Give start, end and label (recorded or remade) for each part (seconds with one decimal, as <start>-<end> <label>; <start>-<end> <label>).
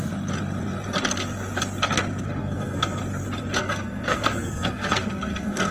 0.0-2.4 recorded; 2.4-3.0 remade; 3.0-3.6 recorded; 3.6-5.7 remade